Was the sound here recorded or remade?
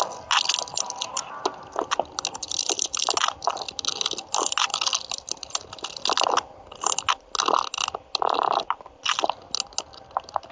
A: recorded